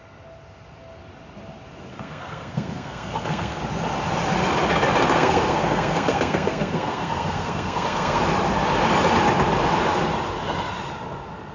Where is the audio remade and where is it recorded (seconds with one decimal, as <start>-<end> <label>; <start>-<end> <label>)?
0.0-1.9 recorded; 1.9-3.6 remade; 3.6-5.0 recorded; 5.0-8.2 remade; 8.2-11.5 recorded